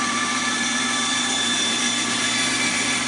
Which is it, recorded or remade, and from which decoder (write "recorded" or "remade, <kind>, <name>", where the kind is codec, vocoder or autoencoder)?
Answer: remade, vocoder, BigVGAN v2